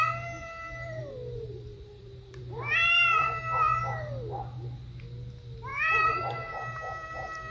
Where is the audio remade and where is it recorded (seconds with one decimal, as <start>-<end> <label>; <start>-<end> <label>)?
0.0-1.0 recorded; 1.0-3.4 remade; 3.4-5.7 recorded; 5.7-6.2 remade; 6.2-7.5 recorded